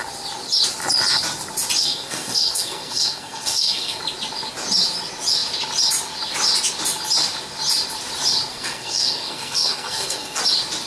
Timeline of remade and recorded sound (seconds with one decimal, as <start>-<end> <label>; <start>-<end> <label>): 0.0-1.8 recorded; 1.8-4.0 remade; 4.0-8.5 recorded; 8.5-10.4 remade; 10.4-10.9 recorded